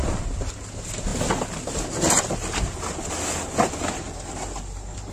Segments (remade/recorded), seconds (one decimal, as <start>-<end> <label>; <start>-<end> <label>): 0.0-5.1 recorded